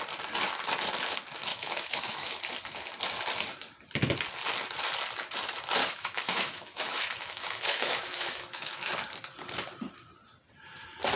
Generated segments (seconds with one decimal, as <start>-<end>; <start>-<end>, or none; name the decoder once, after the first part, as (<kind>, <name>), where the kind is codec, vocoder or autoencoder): 1.5-2.4 (autoencoder, DAC-VAE); 5.8-8.9